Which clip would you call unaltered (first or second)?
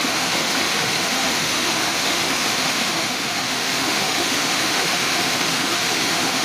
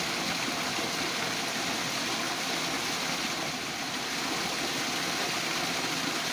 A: second